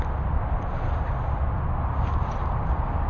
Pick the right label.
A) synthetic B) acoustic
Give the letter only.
B